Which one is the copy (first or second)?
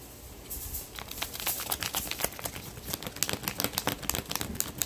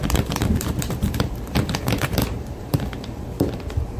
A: second